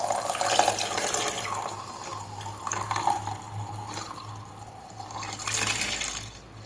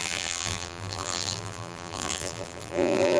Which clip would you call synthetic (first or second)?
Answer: second